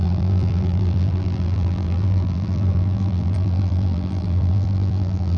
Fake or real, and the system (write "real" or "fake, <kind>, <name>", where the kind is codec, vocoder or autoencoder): fake, vocoder, BigVGAN v2